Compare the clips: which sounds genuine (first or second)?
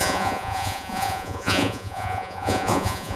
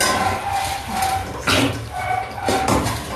second